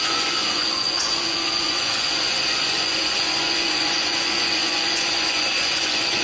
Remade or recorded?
remade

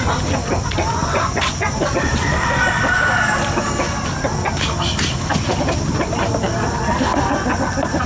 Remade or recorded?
recorded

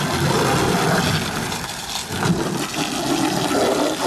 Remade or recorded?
recorded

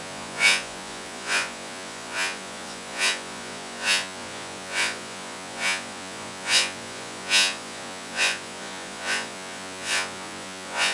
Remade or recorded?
remade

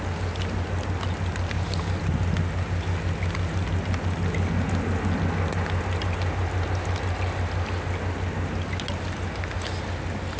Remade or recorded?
recorded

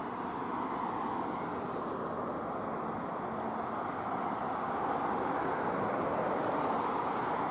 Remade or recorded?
recorded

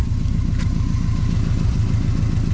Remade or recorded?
recorded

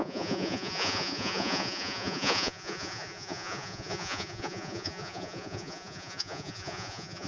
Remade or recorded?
remade